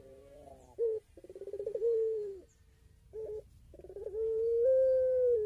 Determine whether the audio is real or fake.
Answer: fake